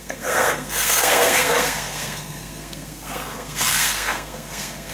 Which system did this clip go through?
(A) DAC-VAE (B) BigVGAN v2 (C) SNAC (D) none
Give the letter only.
C